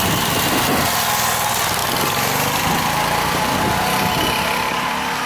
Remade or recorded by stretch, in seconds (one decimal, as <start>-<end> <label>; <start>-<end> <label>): 0.0-5.3 recorded